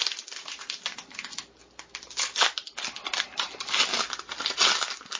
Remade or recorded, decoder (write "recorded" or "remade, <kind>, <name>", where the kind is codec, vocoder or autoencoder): recorded